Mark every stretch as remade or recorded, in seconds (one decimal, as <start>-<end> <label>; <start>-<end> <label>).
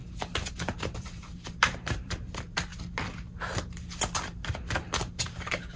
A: 0.0-0.5 recorded; 0.5-2.7 remade; 2.7-5.2 recorded; 5.2-5.8 remade